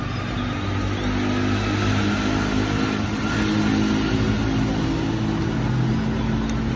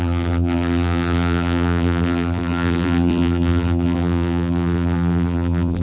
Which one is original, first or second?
first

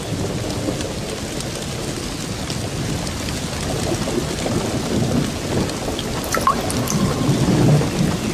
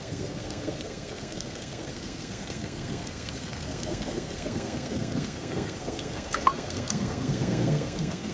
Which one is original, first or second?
first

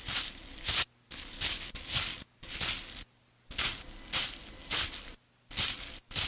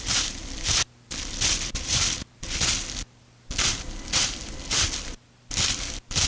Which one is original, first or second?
first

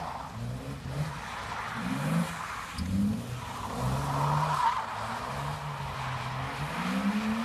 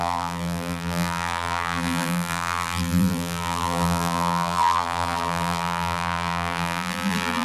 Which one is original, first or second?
first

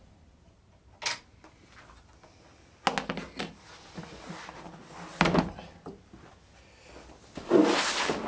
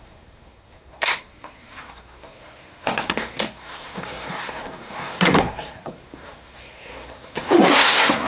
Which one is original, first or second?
first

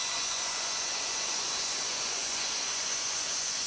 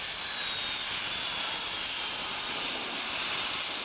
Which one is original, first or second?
second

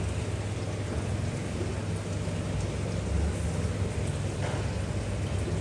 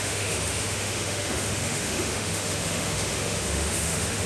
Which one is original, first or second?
first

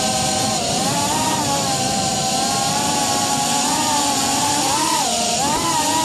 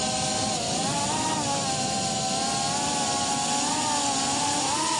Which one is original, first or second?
second